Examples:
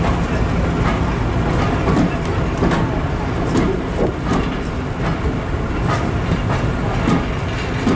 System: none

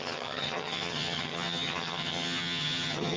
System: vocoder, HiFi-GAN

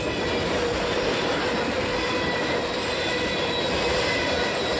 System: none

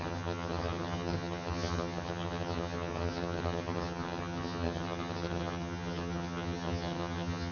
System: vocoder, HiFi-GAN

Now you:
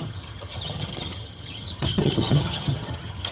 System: vocoder, HiFi-GAN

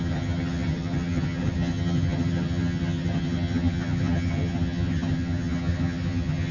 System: vocoder, HiFi-GAN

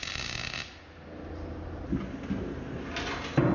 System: none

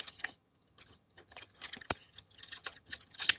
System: vocoder, HiFi-GAN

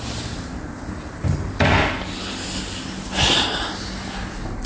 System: none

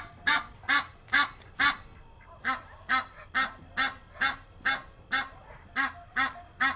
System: none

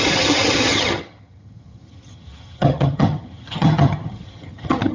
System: vocoder, HiFi-GAN